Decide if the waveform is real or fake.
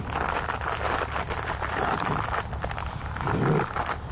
real